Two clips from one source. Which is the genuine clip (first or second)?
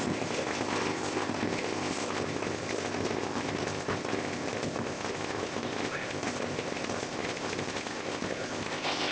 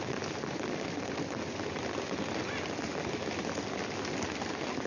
second